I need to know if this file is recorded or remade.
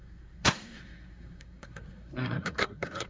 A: remade